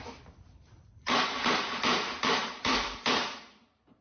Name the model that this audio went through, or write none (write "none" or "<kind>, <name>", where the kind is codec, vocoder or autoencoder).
vocoder, BigVGAN v2